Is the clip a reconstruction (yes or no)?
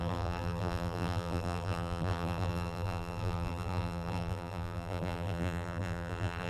yes